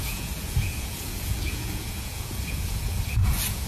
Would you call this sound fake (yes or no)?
yes